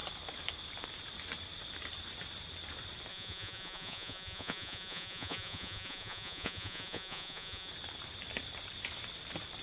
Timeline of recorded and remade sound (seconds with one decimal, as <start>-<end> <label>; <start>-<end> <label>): 0.0-3.1 recorded; 3.1-7.7 remade; 7.7-9.6 recorded